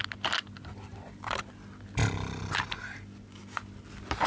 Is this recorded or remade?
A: recorded